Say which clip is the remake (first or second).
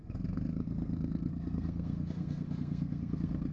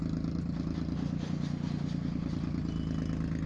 first